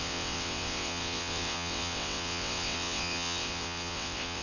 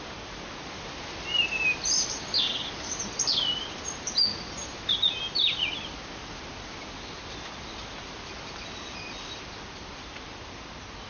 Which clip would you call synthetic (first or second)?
first